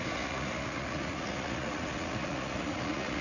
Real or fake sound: fake